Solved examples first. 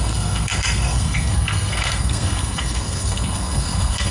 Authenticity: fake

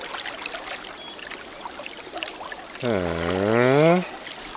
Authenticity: real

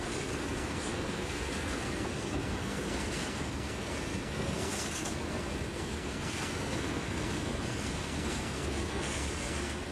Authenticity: fake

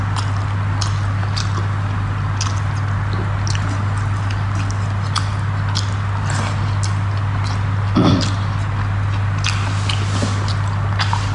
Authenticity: real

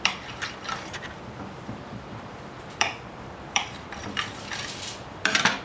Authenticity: fake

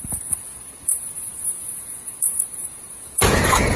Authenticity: fake